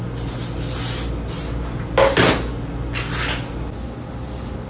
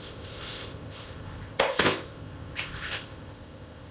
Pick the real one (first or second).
first